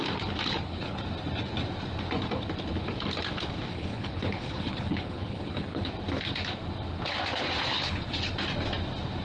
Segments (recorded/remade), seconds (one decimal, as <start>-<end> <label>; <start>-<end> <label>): 0.0-0.5 recorded; 0.5-1.0 remade; 1.0-3.7 recorded; 3.7-5.9 remade; 5.9-7.7 recorded; 7.7-8.3 remade; 8.3-9.2 recorded